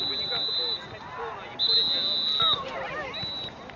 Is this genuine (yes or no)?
yes